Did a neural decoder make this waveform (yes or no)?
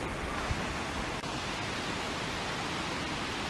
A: no